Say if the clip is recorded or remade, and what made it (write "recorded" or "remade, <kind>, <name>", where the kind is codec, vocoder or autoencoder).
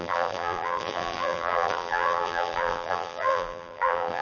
remade, vocoder, BigVGAN v2